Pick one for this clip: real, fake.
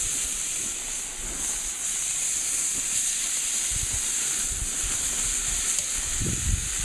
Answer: real